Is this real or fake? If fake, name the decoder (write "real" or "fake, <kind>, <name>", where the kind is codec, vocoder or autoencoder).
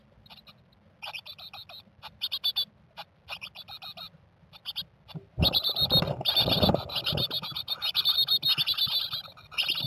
real